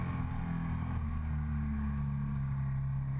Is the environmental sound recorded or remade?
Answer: recorded